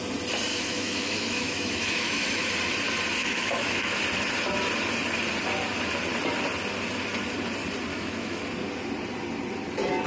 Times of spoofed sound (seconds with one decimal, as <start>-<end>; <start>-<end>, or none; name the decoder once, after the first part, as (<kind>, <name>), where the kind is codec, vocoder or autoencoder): 0.5-2.5 (autoencoder, DAC-VAE); 3.2-4.0; 7.9-8.4